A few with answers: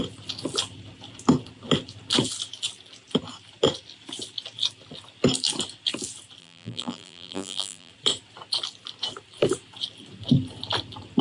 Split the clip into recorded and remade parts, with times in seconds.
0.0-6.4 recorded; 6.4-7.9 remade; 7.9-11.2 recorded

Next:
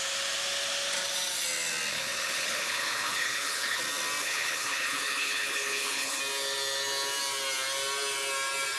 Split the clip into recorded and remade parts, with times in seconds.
0.0-1.9 recorded; 1.9-3.8 remade; 3.8-4.2 recorded; 4.2-6.2 remade; 6.2-8.8 recorded

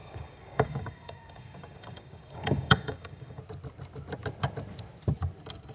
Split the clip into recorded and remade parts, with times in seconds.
0.0-3.4 remade; 3.4-5.7 recorded

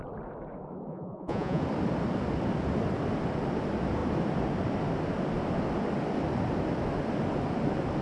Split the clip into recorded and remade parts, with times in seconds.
0.0-0.9 recorded; 0.9-1.6 remade; 1.6-8.0 recorded

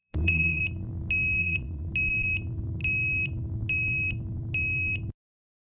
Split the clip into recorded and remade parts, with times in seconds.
0.0-0.6 remade; 0.6-1.4 recorded; 1.4-1.9 remade; 1.9-5.7 recorded

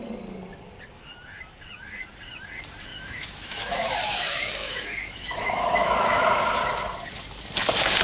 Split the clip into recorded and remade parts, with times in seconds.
0.0-2.9 recorded; 2.9-6.4 remade; 6.4-8.0 recorded

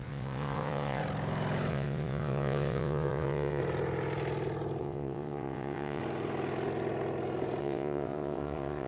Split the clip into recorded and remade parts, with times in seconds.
0.0-1.0 remade; 1.0-1.7 recorded; 1.7-3.6 remade; 3.6-4.8 recorded; 4.8-6.0 remade; 6.0-7.6 recorded; 7.6-8.9 remade